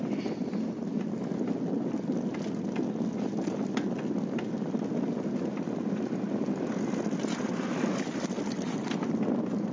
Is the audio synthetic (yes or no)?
no